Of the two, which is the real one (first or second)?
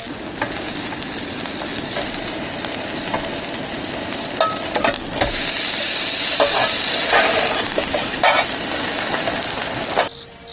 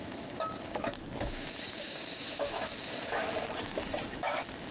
first